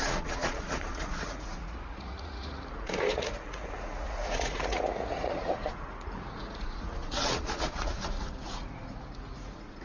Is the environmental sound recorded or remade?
remade